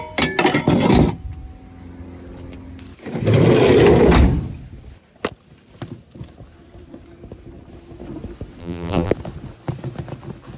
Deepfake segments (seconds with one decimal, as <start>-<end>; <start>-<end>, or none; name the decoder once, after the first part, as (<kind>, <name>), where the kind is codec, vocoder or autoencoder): 8.6-9.1 (vocoder, BigVGAN v2)